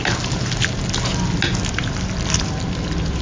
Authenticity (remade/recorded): recorded